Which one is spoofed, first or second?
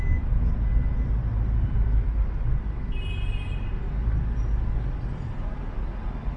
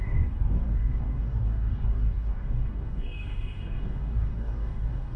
second